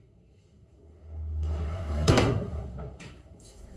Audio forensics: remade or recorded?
remade